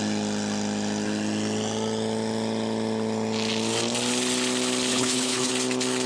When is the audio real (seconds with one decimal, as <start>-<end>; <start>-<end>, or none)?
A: 0.0-4.9; 5.5-6.1